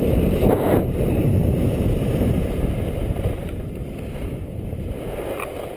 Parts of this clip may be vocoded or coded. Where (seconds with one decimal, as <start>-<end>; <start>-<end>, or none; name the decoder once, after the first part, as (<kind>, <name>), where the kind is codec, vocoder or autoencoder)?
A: 0.0-3.8 (vocoder, BigVGAN v2); 4.7-5.8